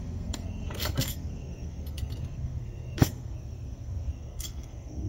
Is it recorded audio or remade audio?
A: remade